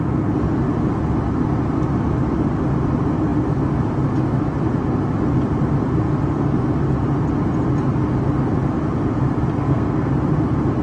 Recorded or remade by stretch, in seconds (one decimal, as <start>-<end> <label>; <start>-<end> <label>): 0.0-9.6 recorded; 9.6-10.1 remade; 10.1-10.8 recorded